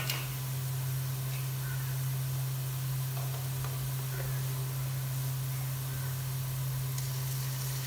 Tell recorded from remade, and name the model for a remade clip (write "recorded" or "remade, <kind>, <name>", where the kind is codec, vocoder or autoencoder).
recorded